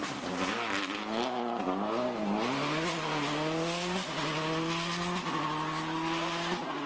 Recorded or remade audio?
recorded